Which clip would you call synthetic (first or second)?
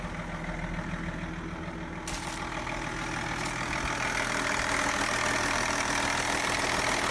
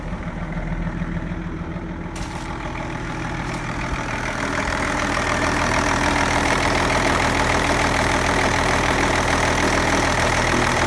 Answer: second